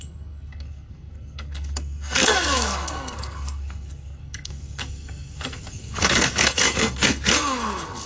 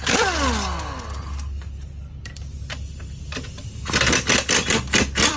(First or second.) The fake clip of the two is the first